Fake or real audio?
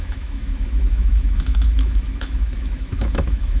fake